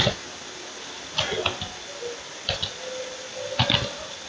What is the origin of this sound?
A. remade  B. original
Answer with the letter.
B